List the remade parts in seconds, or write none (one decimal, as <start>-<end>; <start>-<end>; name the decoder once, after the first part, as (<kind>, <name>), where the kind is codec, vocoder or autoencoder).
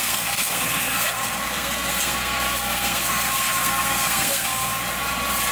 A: 0.0-4.7 (codec, SNAC)